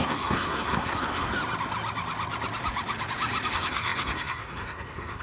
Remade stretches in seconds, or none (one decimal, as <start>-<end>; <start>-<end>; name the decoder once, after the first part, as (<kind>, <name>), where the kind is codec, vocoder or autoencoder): 0.0-1.3 (codec, SNAC); 3.5-5.2